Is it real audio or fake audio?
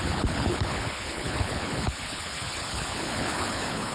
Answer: fake